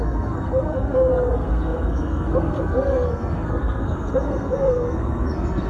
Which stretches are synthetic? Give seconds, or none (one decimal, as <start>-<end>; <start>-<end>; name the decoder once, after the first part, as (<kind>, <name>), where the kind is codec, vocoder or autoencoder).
0.0-5.7 (codec, SNAC)